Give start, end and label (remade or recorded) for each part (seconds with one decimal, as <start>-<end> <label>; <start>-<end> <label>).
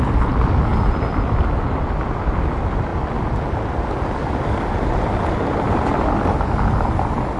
0.0-7.4 recorded